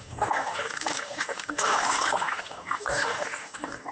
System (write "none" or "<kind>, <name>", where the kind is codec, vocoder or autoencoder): codec, DAC